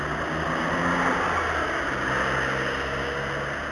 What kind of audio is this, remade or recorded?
recorded